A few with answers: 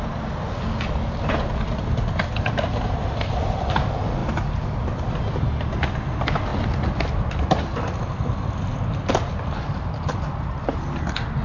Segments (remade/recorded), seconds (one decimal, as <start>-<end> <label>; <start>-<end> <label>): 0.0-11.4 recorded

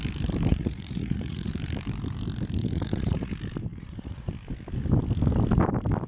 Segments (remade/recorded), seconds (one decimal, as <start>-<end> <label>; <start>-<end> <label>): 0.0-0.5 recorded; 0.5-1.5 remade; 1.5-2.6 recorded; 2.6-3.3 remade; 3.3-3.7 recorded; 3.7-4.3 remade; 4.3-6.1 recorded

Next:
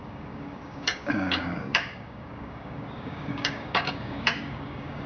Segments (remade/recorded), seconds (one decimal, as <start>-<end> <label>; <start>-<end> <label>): 0.0-5.1 remade

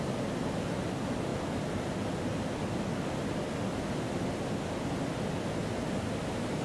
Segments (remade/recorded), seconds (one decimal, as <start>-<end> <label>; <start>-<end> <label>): 0.0-6.6 recorded

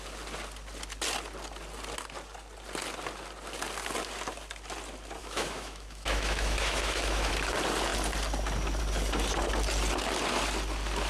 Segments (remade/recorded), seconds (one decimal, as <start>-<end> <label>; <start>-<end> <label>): 0.0-5.2 recorded; 5.2-7.3 remade; 7.3-11.1 recorded

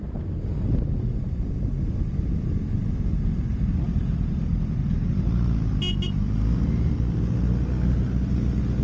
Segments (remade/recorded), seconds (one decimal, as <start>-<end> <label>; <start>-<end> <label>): 0.0-4.8 remade; 4.8-8.8 recorded

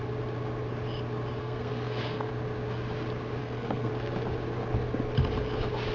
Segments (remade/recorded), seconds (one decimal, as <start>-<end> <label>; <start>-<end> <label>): 0.0-1.4 recorded; 1.4-2.3 remade; 2.3-3.4 recorded; 3.4-3.9 remade; 3.9-5.9 recorded

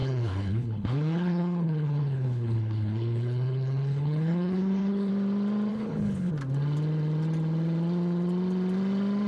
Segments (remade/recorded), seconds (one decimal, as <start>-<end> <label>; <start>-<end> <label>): 0.0-5.1 remade; 5.1-5.7 recorded; 5.7-6.3 remade; 6.3-9.3 recorded